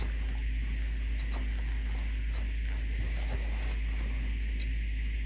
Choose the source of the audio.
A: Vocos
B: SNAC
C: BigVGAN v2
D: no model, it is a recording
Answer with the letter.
D